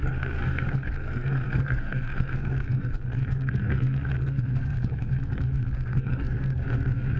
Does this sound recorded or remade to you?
remade